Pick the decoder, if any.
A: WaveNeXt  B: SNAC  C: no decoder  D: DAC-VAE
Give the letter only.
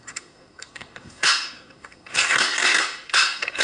B